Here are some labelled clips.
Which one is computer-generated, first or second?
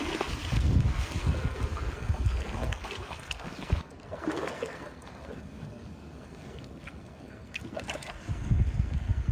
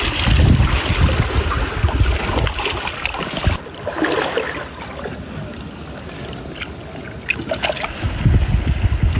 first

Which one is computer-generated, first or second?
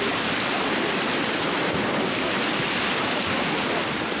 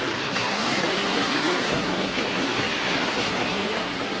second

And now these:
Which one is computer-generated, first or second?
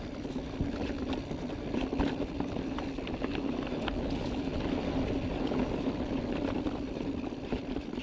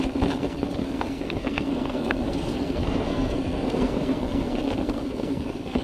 second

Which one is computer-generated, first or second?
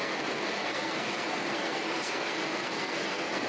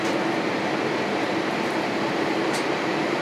first